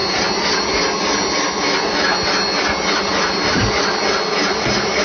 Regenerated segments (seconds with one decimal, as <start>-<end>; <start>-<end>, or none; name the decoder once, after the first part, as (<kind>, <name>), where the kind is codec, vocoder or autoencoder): none

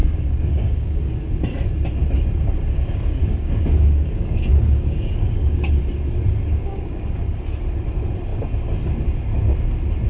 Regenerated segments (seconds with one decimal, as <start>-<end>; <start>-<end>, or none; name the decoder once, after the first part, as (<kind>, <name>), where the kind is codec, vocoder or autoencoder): 0.0-1.3 (codec, DAC); 3.2-5.8; 6.5-7.4

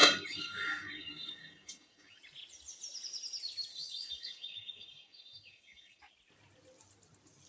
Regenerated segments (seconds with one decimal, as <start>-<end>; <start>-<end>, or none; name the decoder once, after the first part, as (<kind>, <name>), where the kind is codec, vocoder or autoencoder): 0.0-2.2 (codec, DAC); 3.7-6.0

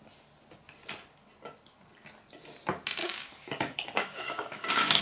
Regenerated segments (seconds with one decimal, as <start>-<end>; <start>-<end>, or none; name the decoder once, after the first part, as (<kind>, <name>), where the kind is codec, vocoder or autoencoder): 3.0-5.0 (codec, DAC)

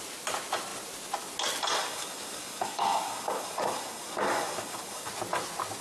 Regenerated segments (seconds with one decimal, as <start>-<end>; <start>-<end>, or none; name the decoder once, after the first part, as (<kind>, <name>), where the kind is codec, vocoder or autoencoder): 1.8-5.1 (codec, DAC)